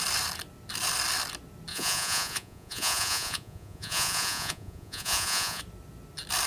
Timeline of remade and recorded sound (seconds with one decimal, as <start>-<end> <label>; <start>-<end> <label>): 0.0-1.7 recorded; 1.7-5.6 remade; 5.6-6.5 recorded